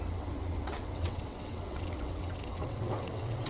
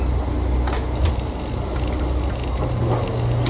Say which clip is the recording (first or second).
second